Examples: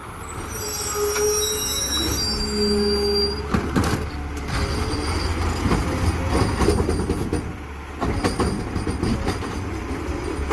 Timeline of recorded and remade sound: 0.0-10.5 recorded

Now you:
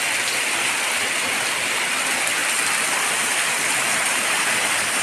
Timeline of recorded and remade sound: 0.0-5.0 recorded

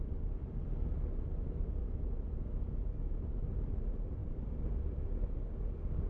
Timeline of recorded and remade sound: 0.0-6.1 recorded

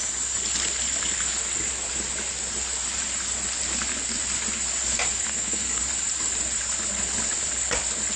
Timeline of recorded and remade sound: 0.0-5.3 recorded; 5.3-5.8 remade; 5.8-8.2 recorded

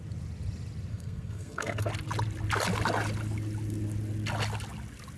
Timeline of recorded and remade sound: 0.0-0.9 recorded; 0.9-1.9 remade; 1.9-5.2 recorded

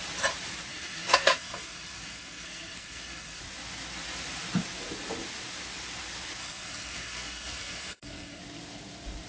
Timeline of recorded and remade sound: 0.0-0.7 recorded; 0.7-3.4 remade; 3.4-6.4 recorded; 6.4-8.4 remade; 8.4-9.3 recorded

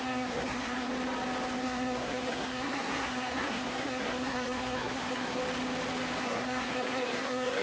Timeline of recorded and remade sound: 0.0-0.9 remade; 0.9-1.6 recorded; 1.6-5.4 remade; 5.4-6.2 recorded; 6.2-7.6 remade

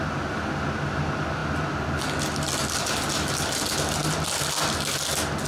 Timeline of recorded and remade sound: 0.0-5.5 recorded